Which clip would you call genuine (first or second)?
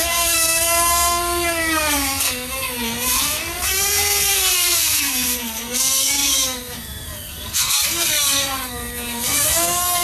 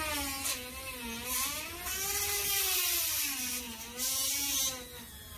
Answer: second